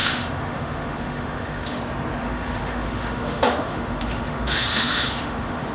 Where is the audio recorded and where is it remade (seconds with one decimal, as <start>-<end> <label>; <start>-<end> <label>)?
0.0-1.8 remade; 1.8-2.2 recorded; 2.2-5.7 remade